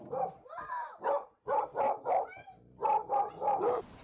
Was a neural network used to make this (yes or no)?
yes